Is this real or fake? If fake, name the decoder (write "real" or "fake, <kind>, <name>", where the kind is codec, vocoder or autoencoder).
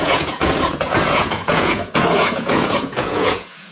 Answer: fake, vocoder, Vocos